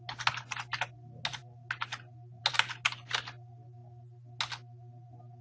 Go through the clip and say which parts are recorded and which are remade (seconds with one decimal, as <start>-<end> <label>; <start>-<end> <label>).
0.0-5.4 recorded